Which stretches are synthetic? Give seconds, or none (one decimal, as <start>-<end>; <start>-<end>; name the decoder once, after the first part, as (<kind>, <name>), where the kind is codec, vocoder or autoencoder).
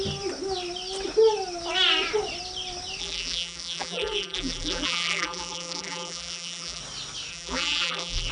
3.0-6.8 (vocoder, BigVGAN v2); 7.3-8.3